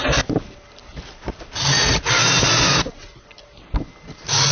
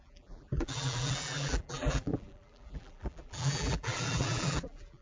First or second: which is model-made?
second